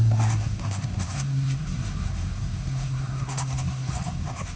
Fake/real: fake